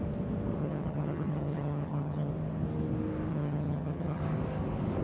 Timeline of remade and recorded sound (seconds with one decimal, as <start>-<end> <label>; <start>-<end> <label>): 0.0-0.6 recorded; 0.6-2.3 remade; 2.3-3.3 recorded; 3.3-4.2 remade; 4.2-5.0 recorded